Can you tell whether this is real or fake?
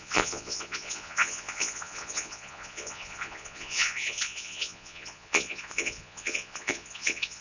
fake